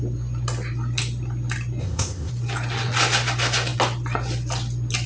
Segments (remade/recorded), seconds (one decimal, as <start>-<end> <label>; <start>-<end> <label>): 0.0-1.8 recorded; 1.8-2.3 remade; 2.3-5.1 recorded